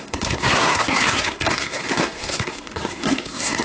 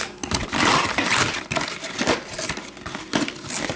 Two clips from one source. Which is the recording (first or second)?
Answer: second